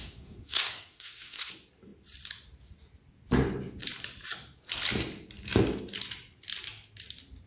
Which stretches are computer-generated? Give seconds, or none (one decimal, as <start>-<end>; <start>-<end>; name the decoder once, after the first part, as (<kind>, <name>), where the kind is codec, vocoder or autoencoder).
0.0-1.5 (codec, SNAC)